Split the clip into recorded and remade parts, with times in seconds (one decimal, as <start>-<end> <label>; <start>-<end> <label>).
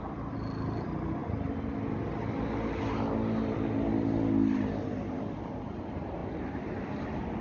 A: 0.0-7.4 recorded